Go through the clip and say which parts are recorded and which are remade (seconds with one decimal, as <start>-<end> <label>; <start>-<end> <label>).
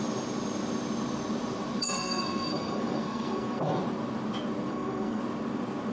0.0-1.8 recorded; 1.8-3.8 remade; 3.8-4.7 recorded; 4.7-5.2 remade; 5.2-5.9 recorded